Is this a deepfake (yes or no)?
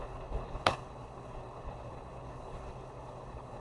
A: yes